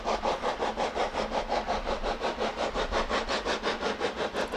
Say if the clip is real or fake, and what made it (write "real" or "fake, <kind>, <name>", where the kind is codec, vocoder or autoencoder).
real